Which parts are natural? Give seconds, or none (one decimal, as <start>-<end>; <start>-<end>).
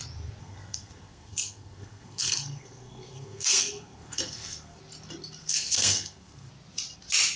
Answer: 0.0-0.4; 4.8-5.4; 6.5-7.4